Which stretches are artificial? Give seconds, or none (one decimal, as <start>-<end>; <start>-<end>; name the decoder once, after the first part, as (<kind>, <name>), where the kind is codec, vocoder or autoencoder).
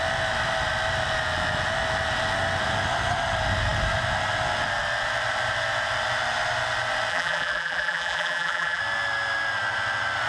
7.1-8.8 (vocoder, BigVGAN v2)